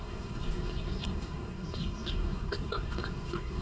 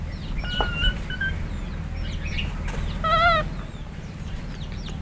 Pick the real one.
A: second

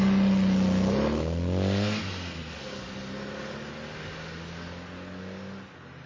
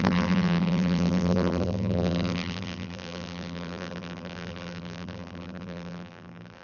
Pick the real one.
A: first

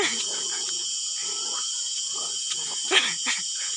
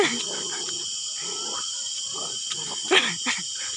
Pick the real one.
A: second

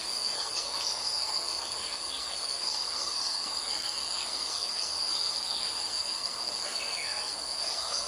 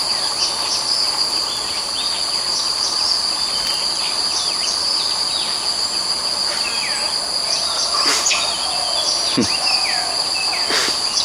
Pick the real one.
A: second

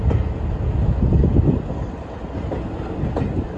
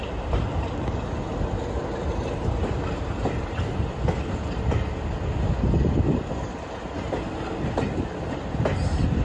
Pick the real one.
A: second